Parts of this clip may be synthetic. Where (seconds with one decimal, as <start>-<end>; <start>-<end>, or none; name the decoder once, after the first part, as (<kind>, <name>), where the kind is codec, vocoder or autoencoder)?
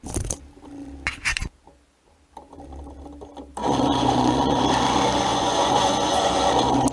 3.6-4.6 (vocoder, Vocos); 5.3-6.4